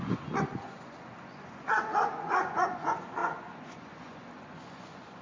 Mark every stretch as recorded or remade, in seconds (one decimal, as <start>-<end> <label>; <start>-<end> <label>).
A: 0.0-5.2 remade